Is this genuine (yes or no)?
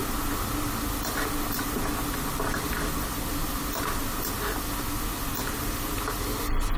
yes